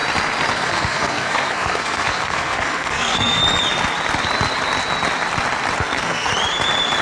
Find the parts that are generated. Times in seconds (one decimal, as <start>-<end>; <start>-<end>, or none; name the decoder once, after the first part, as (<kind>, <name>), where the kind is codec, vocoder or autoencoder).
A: 0.5-3.4 (codec, SNAC); 5.8-6.3